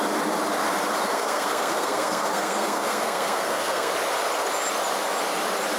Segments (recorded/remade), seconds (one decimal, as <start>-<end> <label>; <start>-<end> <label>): 0.0-1.1 recorded; 1.1-3.9 remade; 3.9-5.8 recorded